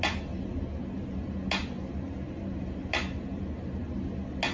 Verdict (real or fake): real